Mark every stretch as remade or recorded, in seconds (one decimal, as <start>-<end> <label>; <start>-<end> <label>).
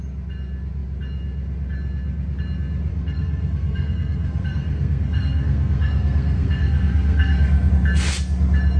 0.0-2.9 recorded; 2.9-7.7 remade; 7.7-8.8 recorded